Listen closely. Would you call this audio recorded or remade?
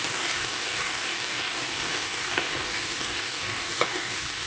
remade